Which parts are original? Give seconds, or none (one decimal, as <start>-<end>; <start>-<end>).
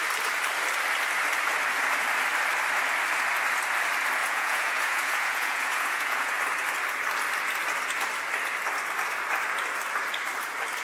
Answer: 0.0-4.2; 6.3-10.8